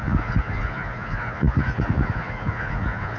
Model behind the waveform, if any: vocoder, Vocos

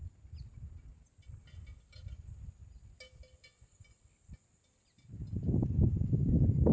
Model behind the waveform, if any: none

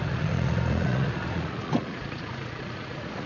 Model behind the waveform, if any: vocoder, Vocos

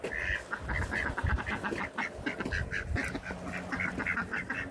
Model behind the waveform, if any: none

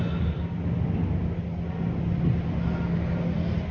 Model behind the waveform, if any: none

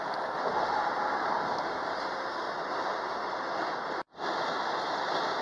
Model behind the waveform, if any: none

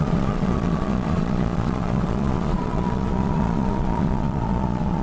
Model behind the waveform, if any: vocoder, Vocos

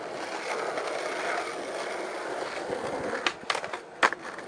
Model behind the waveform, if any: none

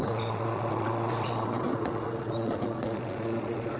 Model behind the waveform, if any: vocoder, Vocos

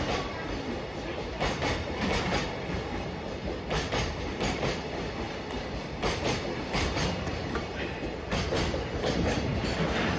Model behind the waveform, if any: none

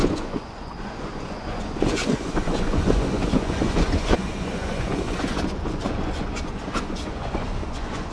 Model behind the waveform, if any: vocoder, Vocos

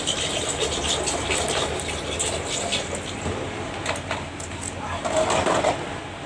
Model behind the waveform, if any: none